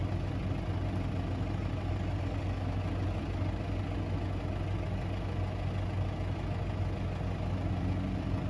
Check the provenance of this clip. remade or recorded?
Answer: recorded